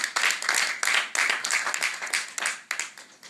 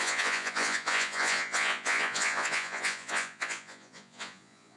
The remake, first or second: second